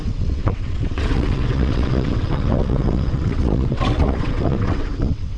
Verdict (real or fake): fake